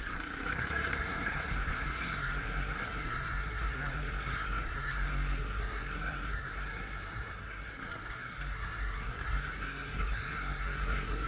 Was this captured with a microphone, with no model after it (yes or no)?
no